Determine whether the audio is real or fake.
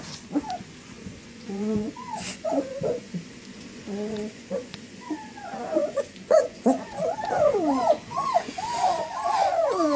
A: fake